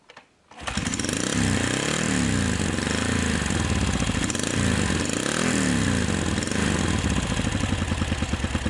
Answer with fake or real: real